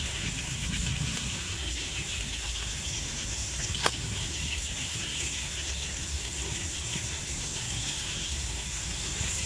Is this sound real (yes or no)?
no